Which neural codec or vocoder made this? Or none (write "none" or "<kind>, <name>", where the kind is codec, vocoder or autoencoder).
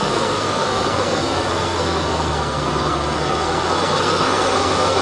codec, SNAC